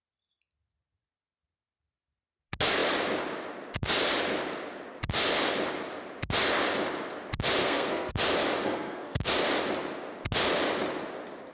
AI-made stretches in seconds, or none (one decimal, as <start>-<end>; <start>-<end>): 7.6-8.1; 8.6-9.2